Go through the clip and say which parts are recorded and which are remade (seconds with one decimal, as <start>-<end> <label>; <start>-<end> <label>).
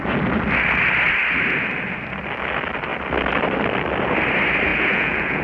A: 0.0-4.7 recorded; 4.7-5.4 remade